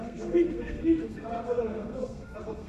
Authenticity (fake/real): fake